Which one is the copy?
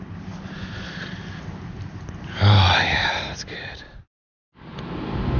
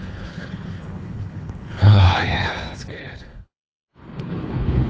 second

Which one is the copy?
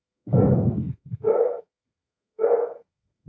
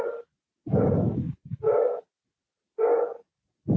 first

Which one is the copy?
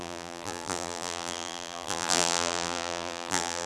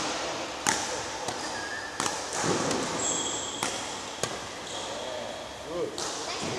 first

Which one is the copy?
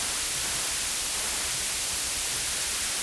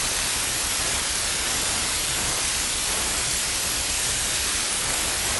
second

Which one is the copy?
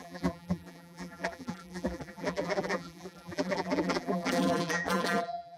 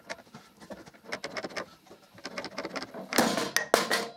first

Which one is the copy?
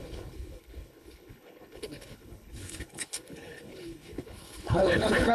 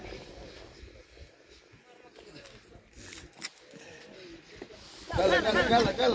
first